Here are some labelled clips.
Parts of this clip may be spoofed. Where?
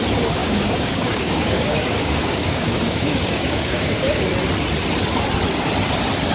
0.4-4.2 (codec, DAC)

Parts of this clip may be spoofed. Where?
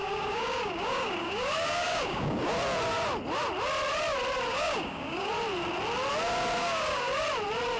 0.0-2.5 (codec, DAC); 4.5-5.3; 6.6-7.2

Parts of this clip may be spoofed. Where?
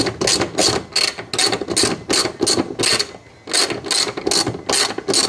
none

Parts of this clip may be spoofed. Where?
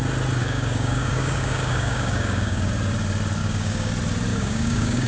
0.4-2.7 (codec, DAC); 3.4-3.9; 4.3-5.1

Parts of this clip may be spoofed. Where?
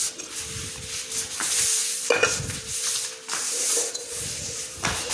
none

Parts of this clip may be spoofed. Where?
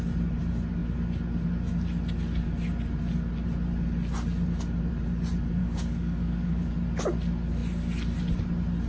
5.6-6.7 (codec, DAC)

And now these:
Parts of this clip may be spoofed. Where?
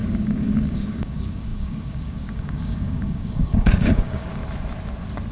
0.0-4.4 (codec, DAC)